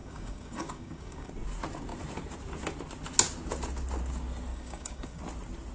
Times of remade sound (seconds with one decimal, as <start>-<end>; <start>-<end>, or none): 0.0-1.3; 4.5-5.2